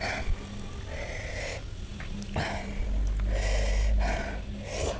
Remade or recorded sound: recorded